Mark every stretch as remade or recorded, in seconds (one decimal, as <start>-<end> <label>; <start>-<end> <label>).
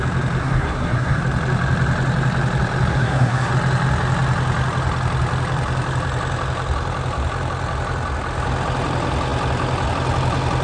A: 0.0-0.4 recorded; 0.4-1.2 remade; 1.2-2.9 recorded; 2.9-3.5 remade; 3.5-10.6 recorded